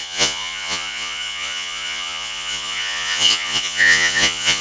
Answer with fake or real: fake